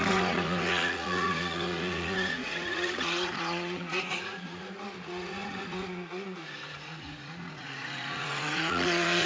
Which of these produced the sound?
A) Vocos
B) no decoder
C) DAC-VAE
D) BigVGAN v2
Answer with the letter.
A